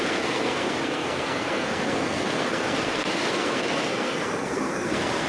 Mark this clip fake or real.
fake